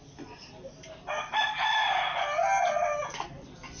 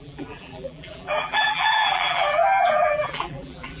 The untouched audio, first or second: first